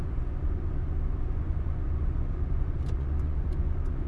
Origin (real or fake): fake